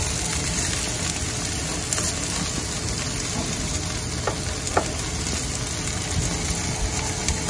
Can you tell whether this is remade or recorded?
recorded